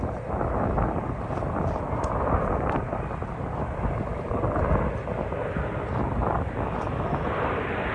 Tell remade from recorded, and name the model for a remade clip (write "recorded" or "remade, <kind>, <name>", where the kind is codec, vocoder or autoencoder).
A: recorded